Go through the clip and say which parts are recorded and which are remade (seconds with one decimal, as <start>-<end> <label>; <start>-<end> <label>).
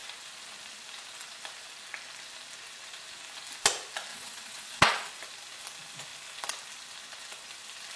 0.0-4.1 recorded; 4.1-5.1 remade; 5.1-8.0 recorded